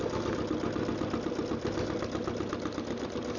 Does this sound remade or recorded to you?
recorded